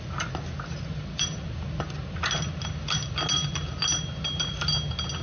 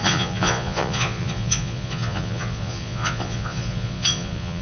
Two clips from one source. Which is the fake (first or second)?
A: second